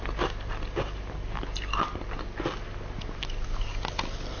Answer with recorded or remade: recorded